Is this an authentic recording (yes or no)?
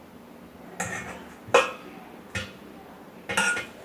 yes